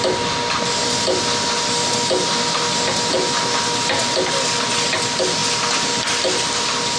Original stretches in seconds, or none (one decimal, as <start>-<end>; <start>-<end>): 0.0-7.0